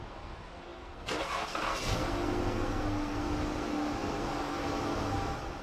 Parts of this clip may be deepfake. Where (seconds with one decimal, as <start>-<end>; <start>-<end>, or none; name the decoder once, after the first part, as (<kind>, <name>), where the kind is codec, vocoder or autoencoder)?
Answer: 0.0-5.6 (codec, SNAC)